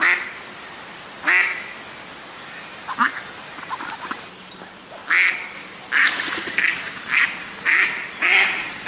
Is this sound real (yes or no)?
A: yes